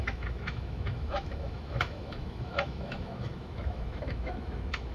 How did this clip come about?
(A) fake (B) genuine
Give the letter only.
A